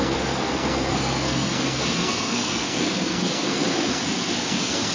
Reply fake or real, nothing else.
fake